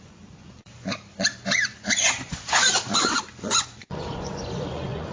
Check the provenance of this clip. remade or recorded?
remade